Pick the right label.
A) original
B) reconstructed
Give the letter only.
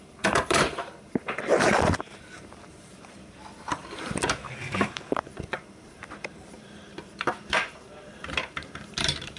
B